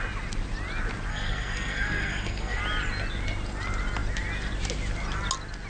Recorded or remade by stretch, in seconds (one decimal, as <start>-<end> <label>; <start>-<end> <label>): 0.0-1.1 recorded; 1.1-2.6 remade; 2.6-5.7 recorded